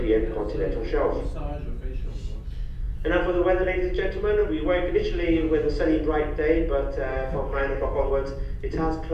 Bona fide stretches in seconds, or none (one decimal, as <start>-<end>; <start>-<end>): 0.0-7.1; 8.1-9.1